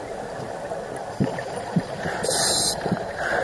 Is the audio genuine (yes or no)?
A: yes